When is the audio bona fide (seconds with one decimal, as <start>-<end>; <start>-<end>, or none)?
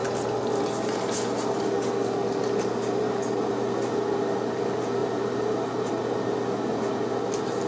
0.0-5.0; 5.9-7.7